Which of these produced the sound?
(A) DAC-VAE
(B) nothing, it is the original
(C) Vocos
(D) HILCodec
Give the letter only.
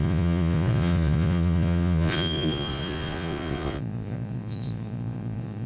C